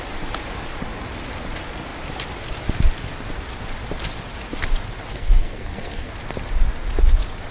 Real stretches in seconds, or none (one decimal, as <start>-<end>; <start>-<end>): 0.0-5.1; 6.1-7.5